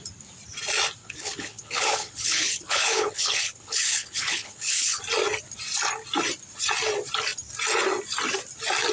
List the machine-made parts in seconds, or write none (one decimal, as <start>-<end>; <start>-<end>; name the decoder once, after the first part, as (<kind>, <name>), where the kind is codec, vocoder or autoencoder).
1.0-5.0 (codec, HILCodec)